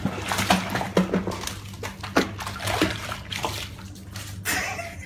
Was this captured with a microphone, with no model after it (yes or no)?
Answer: yes